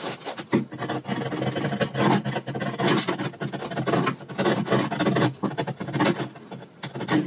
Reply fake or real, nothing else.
real